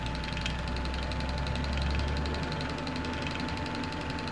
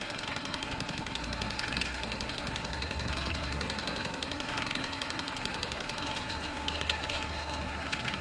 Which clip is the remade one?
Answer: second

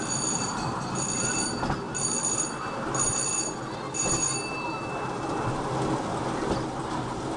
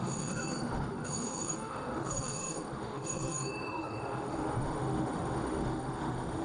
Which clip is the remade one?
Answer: second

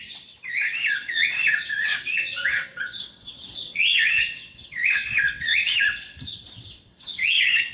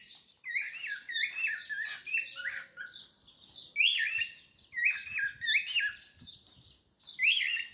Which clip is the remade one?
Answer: first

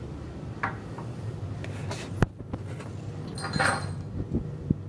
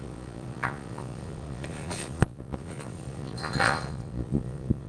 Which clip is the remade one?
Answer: second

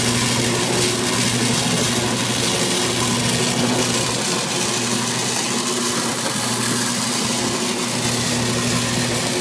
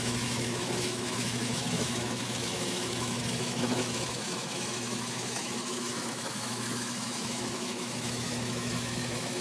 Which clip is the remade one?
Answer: second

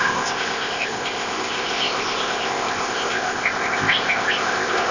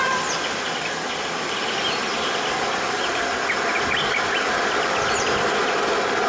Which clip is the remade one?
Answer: first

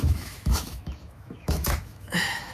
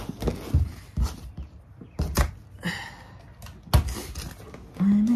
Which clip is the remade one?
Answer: first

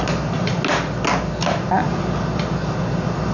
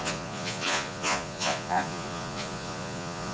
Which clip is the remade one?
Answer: second